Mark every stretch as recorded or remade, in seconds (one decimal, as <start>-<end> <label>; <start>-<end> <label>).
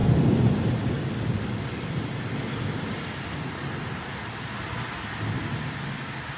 0.0-6.4 recorded